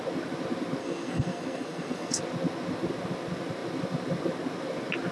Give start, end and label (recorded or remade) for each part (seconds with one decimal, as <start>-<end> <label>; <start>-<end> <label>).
0.0-0.8 recorded; 0.8-2.2 remade; 2.2-5.1 recorded